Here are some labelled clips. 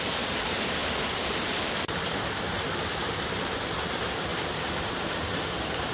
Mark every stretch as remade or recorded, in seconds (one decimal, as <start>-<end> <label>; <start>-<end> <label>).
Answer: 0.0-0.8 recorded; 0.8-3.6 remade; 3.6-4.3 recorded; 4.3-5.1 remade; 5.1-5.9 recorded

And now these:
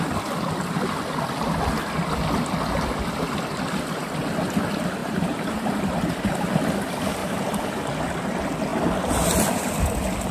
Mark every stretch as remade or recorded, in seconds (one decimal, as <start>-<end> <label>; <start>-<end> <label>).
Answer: 0.0-5.0 recorded; 5.0-6.5 remade; 6.5-7.2 recorded; 7.2-7.8 remade; 7.8-10.3 recorded

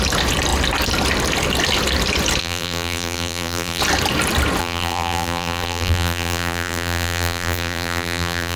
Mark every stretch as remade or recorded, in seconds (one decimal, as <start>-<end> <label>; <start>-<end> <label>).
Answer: 0.0-2.4 recorded; 2.4-3.8 remade; 3.8-4.6 recorded; 4.6-8.6 remade

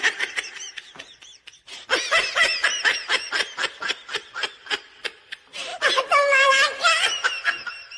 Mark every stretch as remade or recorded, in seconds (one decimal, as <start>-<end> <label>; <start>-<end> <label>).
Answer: 0.0-8.0 remade

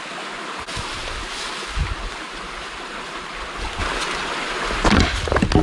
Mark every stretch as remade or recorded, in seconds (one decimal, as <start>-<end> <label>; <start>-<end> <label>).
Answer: 0.0-5.6 recorded

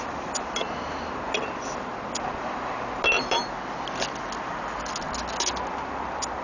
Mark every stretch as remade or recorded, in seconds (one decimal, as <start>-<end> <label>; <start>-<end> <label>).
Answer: 0.0-6.4 recorded

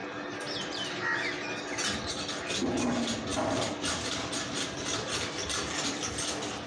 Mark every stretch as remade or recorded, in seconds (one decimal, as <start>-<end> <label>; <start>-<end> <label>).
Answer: 0.0-6.7 recorded

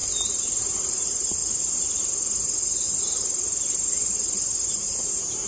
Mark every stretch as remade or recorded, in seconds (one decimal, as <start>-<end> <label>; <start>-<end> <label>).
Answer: 0.0-1.4 remade; 1.4-4.7 recorded; 4.7-5.5 remade